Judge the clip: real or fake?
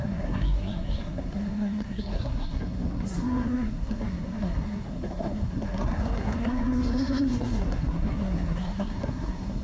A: fake